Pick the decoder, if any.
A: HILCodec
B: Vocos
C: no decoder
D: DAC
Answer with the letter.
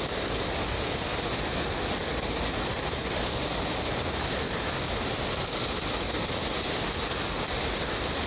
C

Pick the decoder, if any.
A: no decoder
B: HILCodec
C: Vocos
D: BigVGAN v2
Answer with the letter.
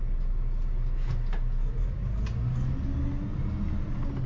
A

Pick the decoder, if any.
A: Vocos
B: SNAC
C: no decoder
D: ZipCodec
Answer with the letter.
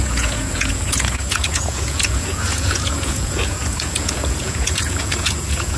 A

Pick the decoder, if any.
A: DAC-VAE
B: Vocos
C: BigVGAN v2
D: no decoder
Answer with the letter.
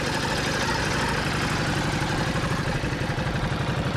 D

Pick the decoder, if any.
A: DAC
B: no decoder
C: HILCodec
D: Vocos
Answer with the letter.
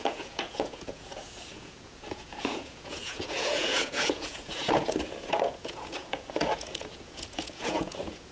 D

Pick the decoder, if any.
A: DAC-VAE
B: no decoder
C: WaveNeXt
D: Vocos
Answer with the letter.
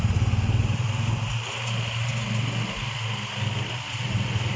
B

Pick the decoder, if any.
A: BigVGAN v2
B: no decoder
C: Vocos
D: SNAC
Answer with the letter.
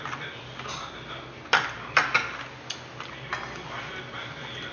B